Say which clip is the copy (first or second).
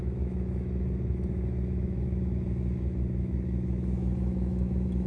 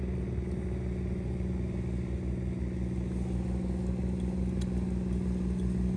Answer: first